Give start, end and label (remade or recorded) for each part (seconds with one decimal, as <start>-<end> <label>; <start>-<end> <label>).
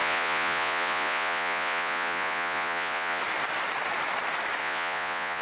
0.0-3.2 remade; 3.2-4.6 recorded; 4.6-5.4 remade